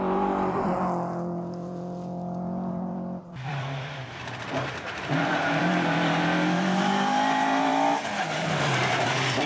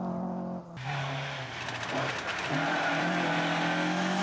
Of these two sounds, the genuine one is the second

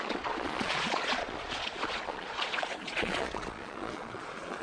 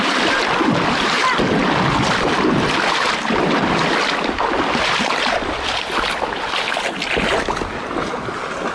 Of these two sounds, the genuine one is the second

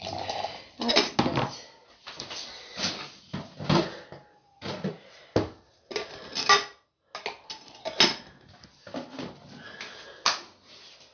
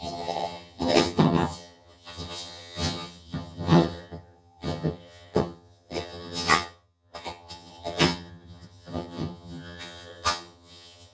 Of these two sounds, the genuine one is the first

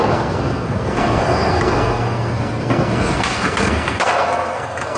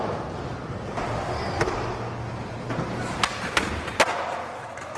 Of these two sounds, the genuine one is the second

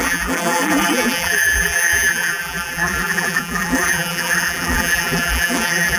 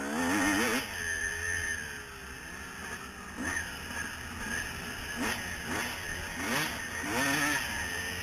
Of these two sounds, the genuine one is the second